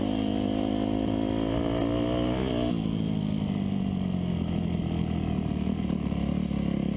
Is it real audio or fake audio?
real